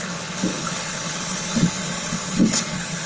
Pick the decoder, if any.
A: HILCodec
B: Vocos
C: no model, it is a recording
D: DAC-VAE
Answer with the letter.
A